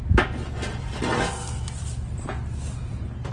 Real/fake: real